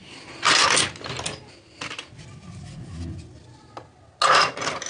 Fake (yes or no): no